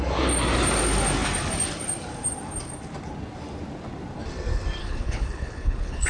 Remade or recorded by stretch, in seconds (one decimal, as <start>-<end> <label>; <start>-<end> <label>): 0.0-4.8 recorded; 4.8-6.1 remade